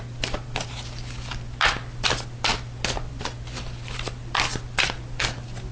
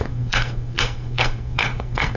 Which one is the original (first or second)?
first